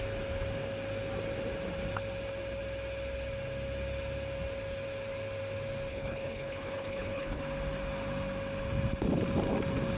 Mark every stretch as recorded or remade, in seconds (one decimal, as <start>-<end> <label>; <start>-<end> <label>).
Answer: 0.0-5.9 recorded; 5.9-7.4 remade; 7.4-10.0 recorded